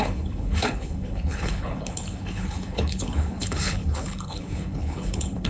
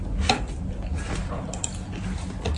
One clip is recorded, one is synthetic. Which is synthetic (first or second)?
first